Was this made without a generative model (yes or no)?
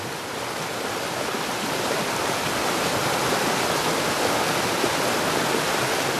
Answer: yes